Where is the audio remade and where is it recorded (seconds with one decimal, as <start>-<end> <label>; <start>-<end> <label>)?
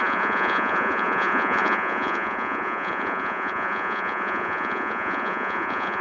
0.0-6.0 remade